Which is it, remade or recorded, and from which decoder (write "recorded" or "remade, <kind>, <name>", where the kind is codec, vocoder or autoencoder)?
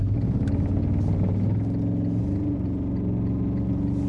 recorded